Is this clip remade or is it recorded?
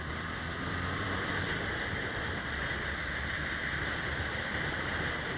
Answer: remade